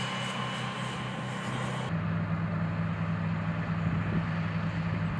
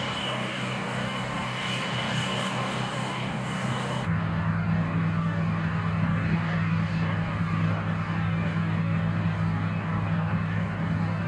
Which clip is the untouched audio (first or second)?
first